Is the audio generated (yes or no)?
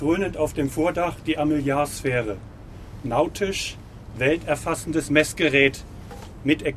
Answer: no